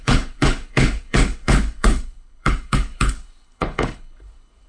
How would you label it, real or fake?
fake